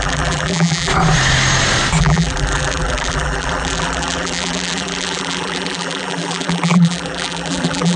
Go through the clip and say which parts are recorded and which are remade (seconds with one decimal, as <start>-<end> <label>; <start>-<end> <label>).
0.0-0.9 remade; 0.9-2.0 recorded; 2.0-8.0 remade